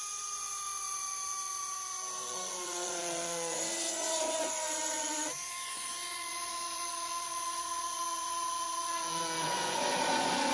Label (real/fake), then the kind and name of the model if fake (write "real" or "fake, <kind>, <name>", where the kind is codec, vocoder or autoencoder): fake, vocoder, Vocos